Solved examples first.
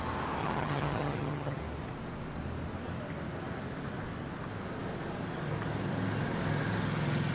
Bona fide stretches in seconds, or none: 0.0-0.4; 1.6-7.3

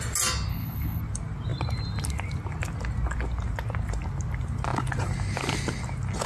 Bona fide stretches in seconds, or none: 0.0-0.5; 1.0-6.3

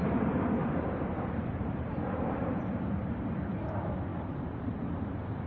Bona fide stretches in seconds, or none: 0.0-0.6; 3.2-4.1

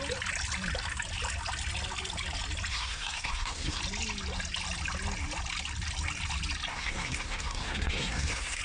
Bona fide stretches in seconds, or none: 0.0-2.7; 3.8-6.7